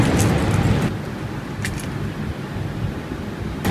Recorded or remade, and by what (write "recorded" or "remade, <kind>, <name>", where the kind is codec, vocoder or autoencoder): recorded